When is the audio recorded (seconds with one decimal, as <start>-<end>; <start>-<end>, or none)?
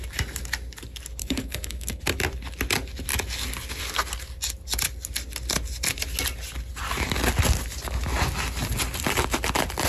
0.0-1.2; 2.0-9.9